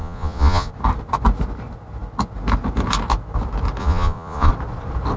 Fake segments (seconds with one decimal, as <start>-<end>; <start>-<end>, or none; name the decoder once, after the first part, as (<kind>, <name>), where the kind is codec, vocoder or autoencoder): 0.0-0.7 (vocoder, Vocos); 3.8-4.5